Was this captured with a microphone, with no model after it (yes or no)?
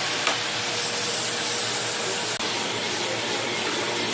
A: yes